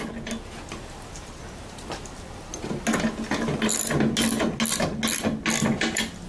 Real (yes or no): yes